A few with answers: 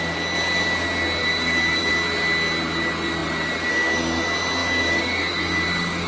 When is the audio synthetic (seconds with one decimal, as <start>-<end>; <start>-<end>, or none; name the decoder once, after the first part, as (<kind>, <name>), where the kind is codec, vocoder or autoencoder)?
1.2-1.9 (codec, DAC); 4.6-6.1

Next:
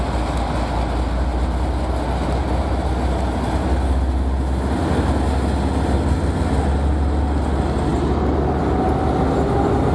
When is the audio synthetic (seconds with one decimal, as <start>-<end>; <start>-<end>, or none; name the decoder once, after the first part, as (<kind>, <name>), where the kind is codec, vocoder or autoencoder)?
none

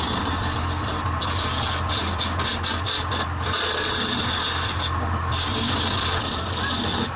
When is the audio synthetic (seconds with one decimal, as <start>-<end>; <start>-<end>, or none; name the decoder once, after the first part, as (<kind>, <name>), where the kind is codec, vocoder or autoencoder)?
none

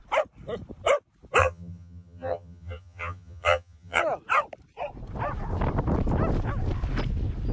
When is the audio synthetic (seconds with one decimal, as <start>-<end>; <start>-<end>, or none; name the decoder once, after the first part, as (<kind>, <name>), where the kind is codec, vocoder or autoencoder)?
1.4-4.0 (vocoder, HiFi-GAN)

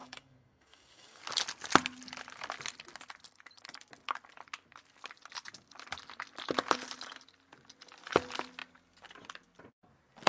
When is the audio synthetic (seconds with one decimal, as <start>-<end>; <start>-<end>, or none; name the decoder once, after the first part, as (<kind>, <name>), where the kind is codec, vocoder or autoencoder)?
0.0-1.2 (codec, DAC)